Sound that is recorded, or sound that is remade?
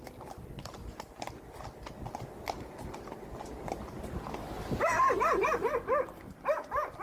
recorded